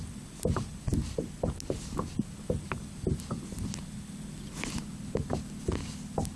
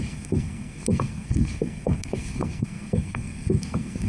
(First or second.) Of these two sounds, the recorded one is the first